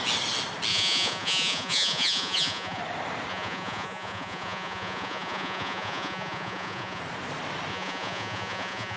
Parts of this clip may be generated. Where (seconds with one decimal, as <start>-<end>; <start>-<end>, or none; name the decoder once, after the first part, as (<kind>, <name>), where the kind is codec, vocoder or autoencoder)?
0.7-2.8 (vocoder, Vocos); 3.3-7.0; 7.7-9.0